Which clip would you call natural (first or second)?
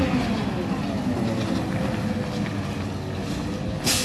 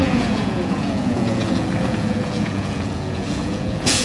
first